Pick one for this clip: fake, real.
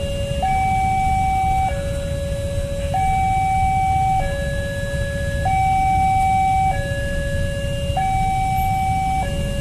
real